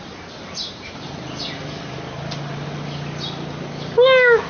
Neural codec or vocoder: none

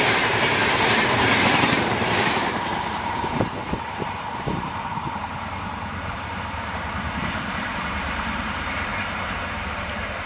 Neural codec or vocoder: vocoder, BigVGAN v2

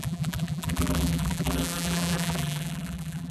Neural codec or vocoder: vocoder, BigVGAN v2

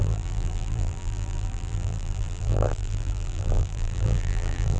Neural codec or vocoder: vocoder, BigVGAN v2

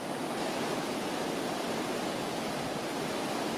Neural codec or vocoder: none